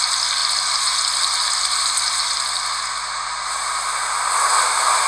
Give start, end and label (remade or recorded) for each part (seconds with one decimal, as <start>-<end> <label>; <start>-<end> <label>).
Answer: 0.0-5.1 recorded